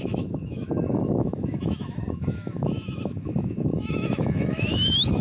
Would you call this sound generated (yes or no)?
yes